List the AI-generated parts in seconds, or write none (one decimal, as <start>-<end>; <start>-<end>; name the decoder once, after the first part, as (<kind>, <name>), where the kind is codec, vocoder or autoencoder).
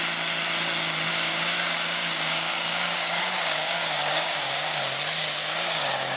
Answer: 1.1-4.8 (codec, DAC); 5.4-6.2